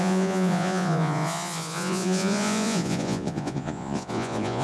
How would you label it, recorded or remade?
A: remade